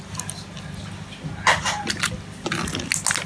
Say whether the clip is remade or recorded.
recorded